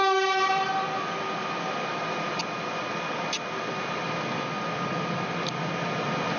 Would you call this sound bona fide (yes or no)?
yes